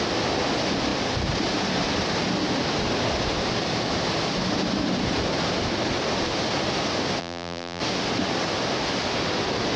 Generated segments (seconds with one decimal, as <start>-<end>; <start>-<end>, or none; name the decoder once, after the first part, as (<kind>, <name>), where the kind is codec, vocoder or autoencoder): 7.2-7.8 (vocoder, BigVGAN v2)